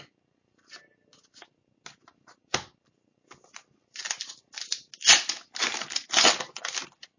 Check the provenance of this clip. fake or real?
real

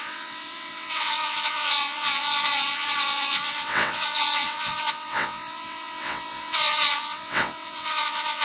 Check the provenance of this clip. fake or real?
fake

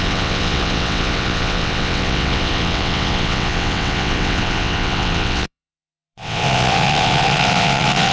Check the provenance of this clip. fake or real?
fake